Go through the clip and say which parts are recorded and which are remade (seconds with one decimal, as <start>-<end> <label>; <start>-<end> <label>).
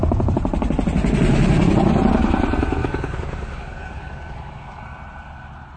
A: 0.0-2.8 recorded; 2.8-4.8 remade; 4.8-5.8 recorded